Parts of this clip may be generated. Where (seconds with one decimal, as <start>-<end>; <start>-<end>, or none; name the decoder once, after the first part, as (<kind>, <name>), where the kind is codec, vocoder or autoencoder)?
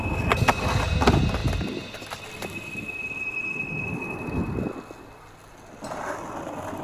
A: none